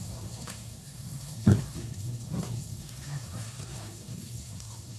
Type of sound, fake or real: fake